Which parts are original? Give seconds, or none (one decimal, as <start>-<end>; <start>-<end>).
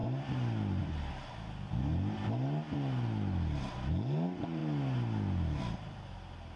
0.0-6.6